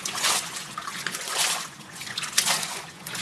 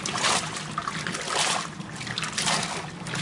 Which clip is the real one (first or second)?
second